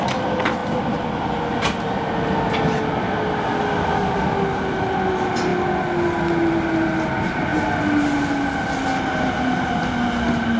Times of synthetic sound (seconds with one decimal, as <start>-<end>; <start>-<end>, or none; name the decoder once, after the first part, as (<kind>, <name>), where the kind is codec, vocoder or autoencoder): none